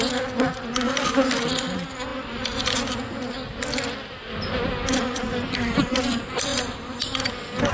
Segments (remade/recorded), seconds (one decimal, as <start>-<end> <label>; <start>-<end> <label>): 0.0-7.7 recorded